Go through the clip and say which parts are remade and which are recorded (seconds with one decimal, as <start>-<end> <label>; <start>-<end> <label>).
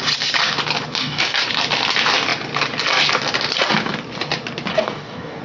0.0-1.0 recorded; 1.0-1.5 remade; 1.5-4.7 recorded; 4.7-5.4 remade